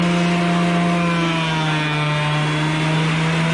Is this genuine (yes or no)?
yes